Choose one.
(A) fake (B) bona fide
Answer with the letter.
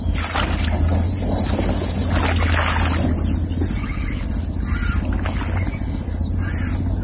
B